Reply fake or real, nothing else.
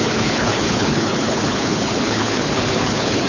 fake